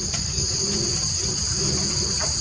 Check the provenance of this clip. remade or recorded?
recorded